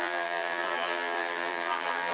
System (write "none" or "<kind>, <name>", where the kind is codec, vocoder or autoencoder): vocoder, BigVGAN v2